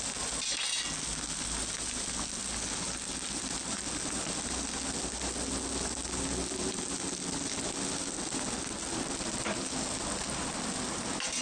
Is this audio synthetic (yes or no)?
no